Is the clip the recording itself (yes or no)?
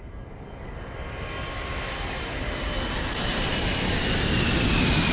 yes